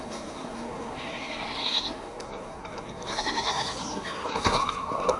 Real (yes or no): no